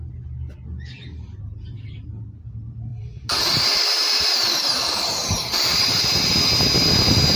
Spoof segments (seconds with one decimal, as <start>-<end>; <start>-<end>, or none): 2.9-6.3